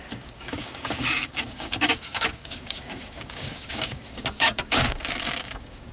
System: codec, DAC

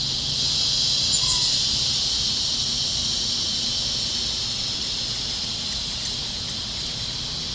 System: none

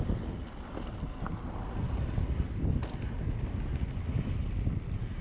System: none